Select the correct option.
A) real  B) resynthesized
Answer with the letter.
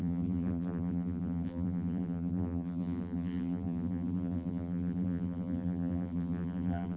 B